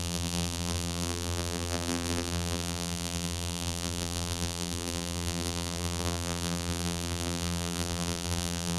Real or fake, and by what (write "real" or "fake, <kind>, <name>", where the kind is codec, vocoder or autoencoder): fake, vocoder, BigVGAN v2